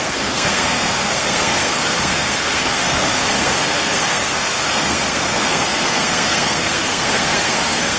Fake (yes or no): yes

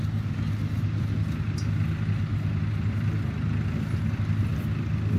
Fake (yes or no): no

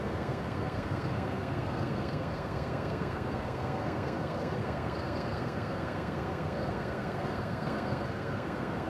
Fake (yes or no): yes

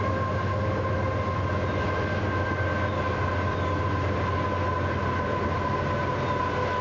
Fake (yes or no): no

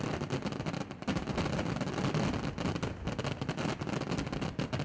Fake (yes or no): no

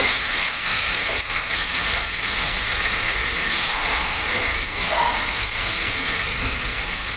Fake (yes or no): yes